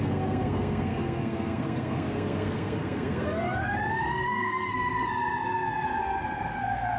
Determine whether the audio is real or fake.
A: fake